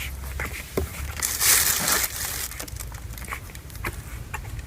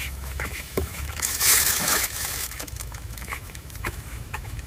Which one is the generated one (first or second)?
second